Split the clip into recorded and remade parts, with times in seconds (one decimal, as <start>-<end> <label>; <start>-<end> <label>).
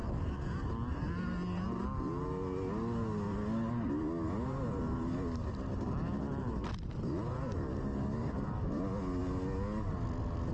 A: 0.0-10.5 recorded